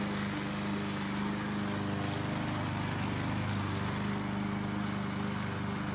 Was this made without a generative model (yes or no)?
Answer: yes